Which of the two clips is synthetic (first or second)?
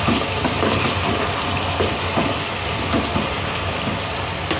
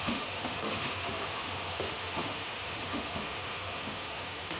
second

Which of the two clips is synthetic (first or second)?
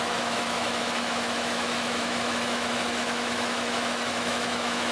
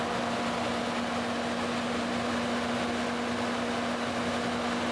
first